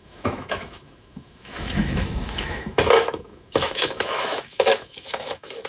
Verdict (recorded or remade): remade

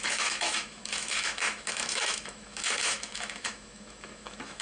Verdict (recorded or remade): remade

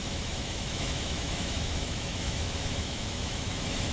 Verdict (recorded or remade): remade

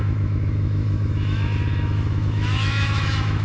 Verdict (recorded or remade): remade